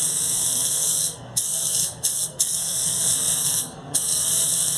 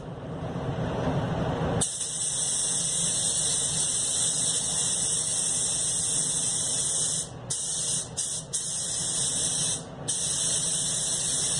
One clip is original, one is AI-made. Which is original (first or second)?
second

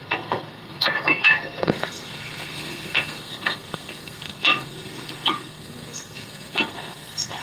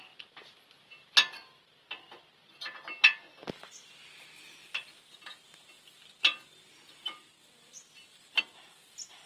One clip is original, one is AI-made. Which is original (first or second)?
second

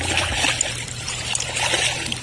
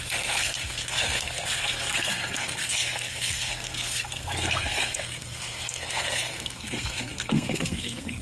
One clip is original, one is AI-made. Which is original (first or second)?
first